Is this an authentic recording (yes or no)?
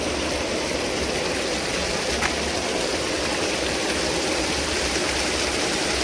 yes